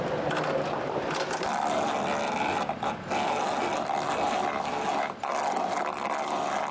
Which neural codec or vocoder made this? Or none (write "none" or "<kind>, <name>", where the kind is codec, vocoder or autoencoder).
none